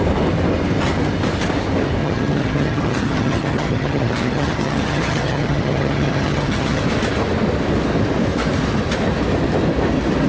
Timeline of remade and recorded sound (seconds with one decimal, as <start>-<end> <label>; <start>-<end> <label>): 0.0-2.0 recorded; 2.0-6.8 remade; 6.8-10.3 recorded